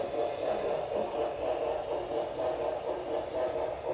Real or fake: real